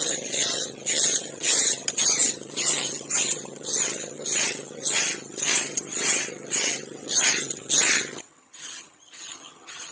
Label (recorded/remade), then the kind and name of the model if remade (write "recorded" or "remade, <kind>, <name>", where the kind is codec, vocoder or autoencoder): remade, vocoder, HiFi-GAN